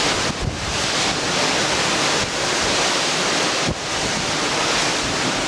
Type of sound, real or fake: real